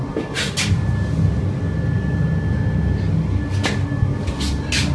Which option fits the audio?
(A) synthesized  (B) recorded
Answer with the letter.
B